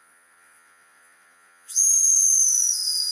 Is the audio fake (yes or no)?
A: yes